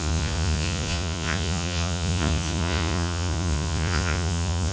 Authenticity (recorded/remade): remade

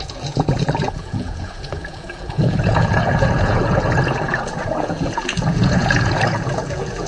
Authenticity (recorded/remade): remade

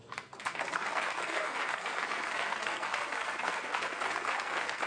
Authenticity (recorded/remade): remade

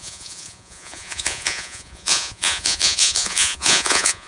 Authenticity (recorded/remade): remade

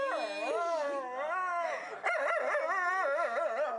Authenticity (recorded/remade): recorded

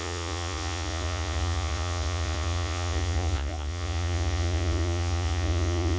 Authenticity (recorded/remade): remade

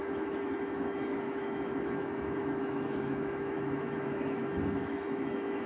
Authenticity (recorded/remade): remade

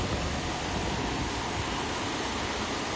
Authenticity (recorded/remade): recorded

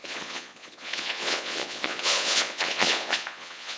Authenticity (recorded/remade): remade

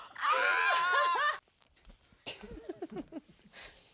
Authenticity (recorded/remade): recorded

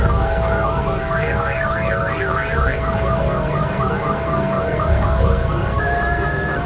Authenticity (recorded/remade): remade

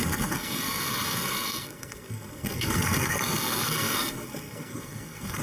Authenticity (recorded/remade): remade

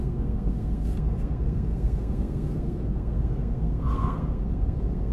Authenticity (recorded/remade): remade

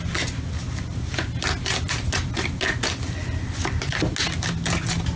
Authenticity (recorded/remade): recorded